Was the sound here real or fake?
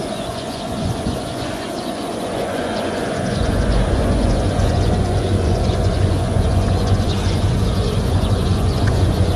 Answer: fake